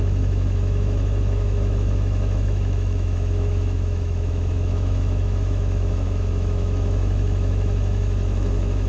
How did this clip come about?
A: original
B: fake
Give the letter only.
B